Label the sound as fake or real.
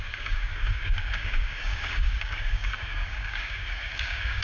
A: fake